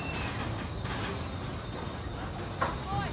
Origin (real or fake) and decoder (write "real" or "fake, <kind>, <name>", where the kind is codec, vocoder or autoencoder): real